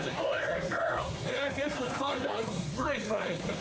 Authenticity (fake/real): fake